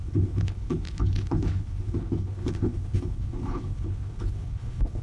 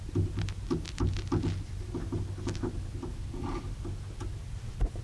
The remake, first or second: first